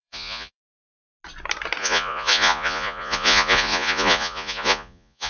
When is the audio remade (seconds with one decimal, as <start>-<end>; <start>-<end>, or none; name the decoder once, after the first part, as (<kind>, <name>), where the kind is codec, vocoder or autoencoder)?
0.0-1.0 (vocoder, Vocos); 1.8-5.3